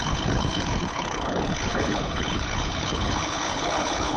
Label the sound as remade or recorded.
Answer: remade